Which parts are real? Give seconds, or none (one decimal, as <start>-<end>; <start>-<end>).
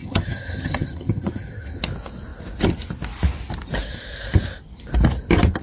1.8-5.6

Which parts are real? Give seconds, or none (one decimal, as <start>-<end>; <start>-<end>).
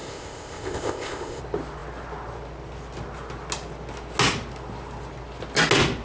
1.4-6.0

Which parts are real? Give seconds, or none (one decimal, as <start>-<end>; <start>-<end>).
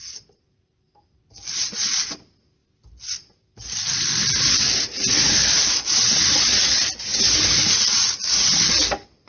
0.0-2.6; 4.2-9.3